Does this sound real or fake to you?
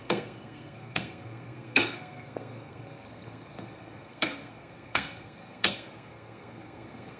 fake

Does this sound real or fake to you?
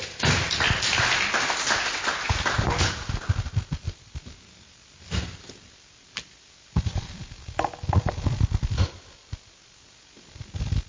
real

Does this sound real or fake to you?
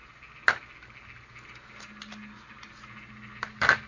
real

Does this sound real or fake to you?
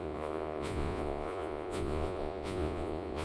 fake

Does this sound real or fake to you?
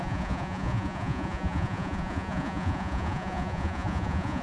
fake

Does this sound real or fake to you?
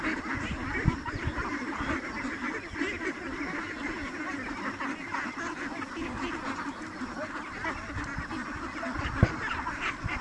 real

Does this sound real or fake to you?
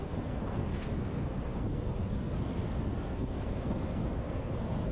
fake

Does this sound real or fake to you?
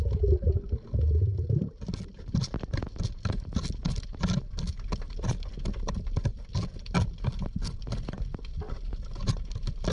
real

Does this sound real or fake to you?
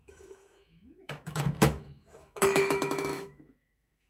fake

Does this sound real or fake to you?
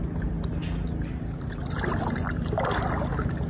real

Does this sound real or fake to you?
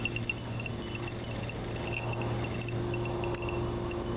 real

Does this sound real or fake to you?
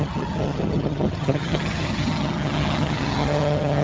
fake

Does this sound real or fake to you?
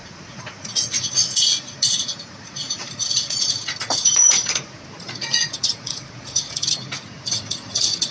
fake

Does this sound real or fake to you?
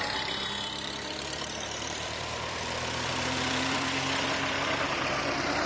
fake